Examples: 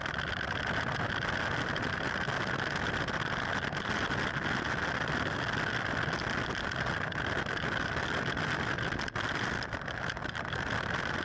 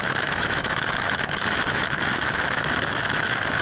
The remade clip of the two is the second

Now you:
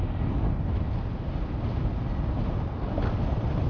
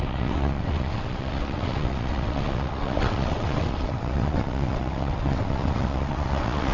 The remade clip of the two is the second